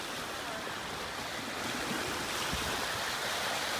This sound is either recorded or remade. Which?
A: recorded